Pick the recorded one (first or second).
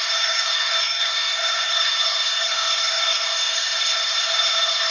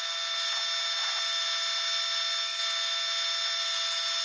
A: second